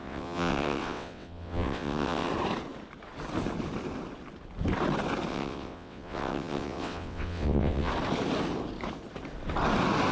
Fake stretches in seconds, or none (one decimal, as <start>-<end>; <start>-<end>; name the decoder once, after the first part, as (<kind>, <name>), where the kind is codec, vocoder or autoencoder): 0.0-2.3 (vocoder, WaveNeXt); 5.3-7.9